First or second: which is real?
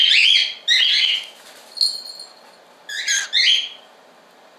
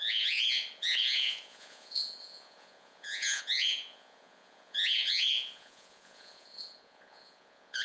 first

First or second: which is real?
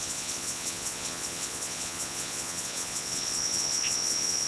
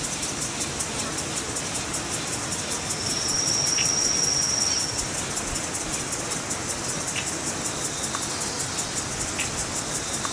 second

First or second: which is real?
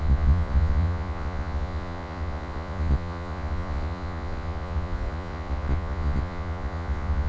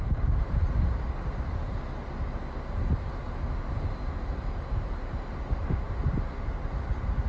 second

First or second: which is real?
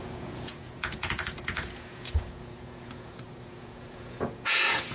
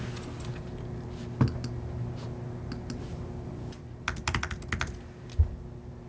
second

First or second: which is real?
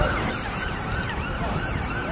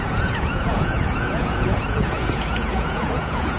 first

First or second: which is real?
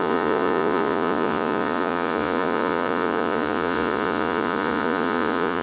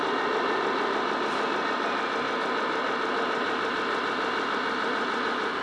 second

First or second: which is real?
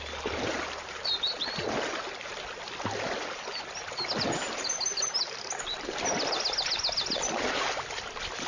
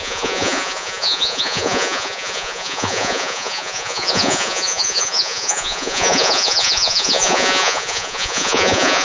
first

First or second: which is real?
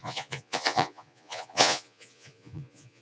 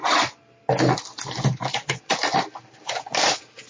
second